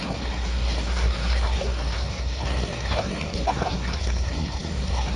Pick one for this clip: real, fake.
fake